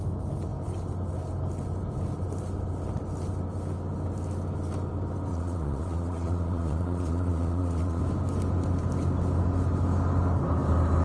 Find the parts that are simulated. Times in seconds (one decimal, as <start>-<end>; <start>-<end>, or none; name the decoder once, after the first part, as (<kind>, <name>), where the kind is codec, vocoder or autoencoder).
5.3-8.0 (vocoder, Vocos)